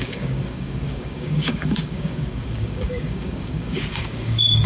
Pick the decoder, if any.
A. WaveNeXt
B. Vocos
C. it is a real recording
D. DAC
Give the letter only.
D